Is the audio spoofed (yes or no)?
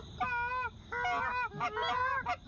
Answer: no